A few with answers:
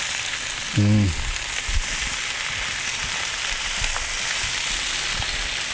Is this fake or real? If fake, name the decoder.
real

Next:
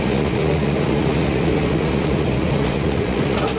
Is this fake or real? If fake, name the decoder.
fake, vocoder, Vocos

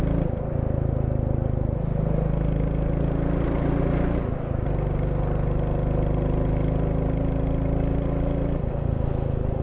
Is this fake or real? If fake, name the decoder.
real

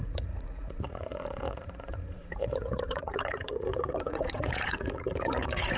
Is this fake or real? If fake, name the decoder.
fake, vocoder, Vocos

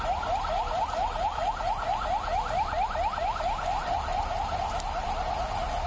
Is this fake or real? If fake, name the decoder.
real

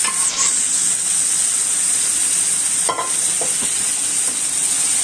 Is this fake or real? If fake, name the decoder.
real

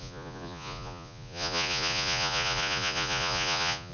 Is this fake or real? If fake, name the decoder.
fake, vocoder, Vocos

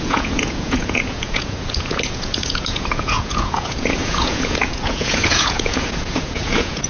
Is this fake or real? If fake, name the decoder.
fake, vocoder, Vocos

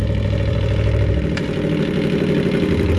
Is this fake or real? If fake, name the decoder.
real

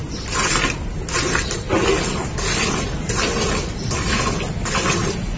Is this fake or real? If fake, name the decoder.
real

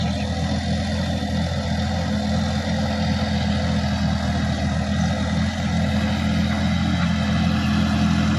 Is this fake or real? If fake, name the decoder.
real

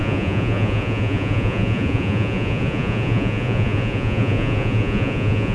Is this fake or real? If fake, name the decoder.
fake, vocoder, Vocos